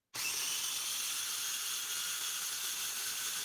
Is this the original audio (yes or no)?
yes